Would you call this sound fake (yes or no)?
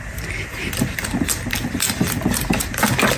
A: no